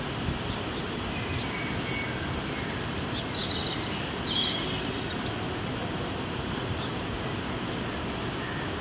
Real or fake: real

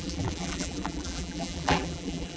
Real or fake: fake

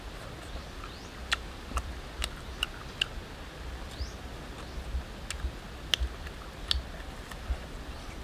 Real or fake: real